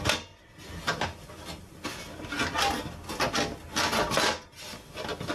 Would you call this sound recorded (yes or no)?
yes